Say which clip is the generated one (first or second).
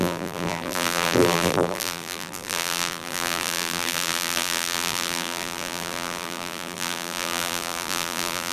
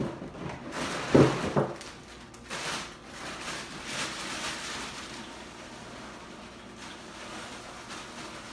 first